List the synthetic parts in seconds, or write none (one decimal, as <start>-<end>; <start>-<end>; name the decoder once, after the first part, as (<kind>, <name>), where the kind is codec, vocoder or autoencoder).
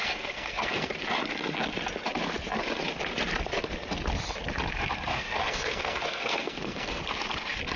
0.0-0.9 (codec, SNAC); 5.1-7.0